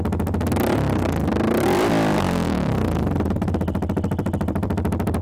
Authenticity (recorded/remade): remade